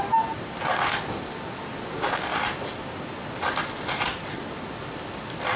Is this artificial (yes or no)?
no